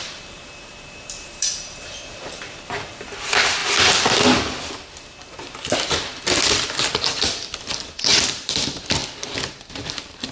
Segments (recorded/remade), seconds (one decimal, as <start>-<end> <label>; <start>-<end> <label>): 0.0-3.6 remade; 3.6-8.1 recorded; 8.1-9.0 remade; 9.0-9.7 recorded; 9.7-10.3 remade